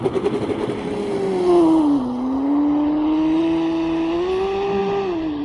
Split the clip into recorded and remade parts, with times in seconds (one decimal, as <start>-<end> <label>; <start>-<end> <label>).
0.0-5.4 recorded